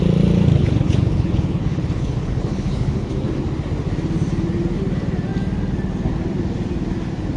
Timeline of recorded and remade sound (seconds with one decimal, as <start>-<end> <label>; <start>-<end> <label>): 0.0-0.6 recorded; 0.6-3.1 remade; 3.1-7.4 recorded